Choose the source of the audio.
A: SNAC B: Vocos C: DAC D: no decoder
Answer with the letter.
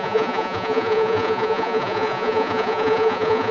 B